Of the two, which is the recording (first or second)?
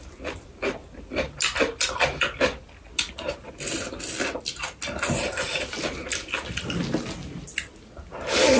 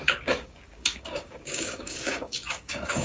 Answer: first